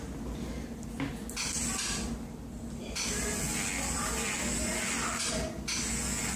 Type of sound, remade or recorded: recorded